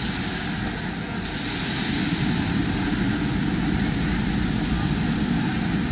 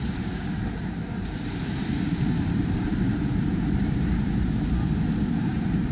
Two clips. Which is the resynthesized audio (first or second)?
second